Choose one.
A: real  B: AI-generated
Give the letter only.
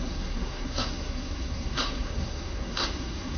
B